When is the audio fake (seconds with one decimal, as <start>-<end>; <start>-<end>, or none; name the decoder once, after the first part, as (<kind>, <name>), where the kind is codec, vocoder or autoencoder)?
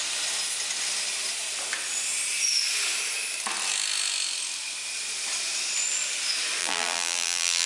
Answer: 6.6-7.7 (vocoder, BigVGAN v2)